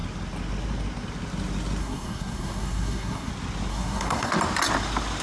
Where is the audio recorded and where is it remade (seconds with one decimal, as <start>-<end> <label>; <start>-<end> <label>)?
0.0-1.8 recorded; 1.8-3.3 remade; 3.3-3.7 recorded; 3.7-4.3 remade; 4.3-5.2 recorded